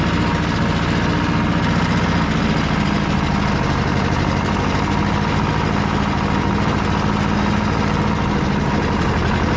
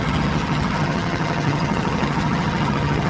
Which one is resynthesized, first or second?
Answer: second